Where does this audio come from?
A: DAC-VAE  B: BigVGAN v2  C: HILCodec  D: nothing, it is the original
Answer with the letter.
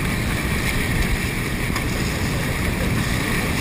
D